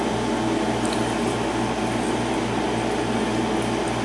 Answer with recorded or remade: recorded